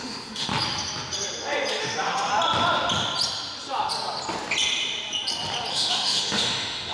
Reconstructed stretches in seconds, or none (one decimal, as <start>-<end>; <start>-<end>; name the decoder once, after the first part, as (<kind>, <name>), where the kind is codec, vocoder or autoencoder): 0.0-0.5 (autoencoder, DAC-VAE); 1.8-2.3; 5.7-6.9